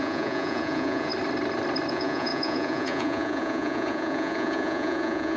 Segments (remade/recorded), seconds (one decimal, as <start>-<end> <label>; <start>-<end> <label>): 0.0-1.1 remade; 1.1-1.9 recorded; 1.9-5.4 remade